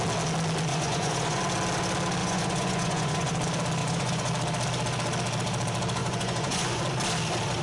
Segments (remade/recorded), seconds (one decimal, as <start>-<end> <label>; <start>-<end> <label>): 0.0-0.7 recorded; 0.7-1.4 remade; 1.4-2.2 recorded; 2.2-3.3 remade; 3.3-3.8 recorded; 3.8-4.3 remade; 4.3-6.0 recorded; 6.0-6.8 remade; 6.8-7.6 recorded